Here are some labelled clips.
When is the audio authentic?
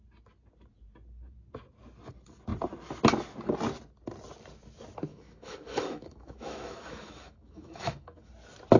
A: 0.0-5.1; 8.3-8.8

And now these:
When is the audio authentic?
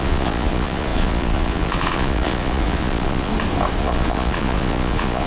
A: 3.3-3.8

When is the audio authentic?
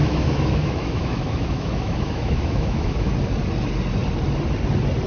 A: 3.1-5.1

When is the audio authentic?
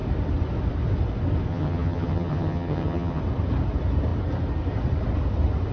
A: 0.0-1.5; 3.2-5.7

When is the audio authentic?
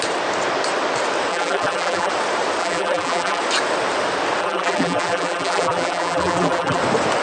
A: 0.0-1.3; 2.1-2.6; 3.4-4.4; 6.8-7.2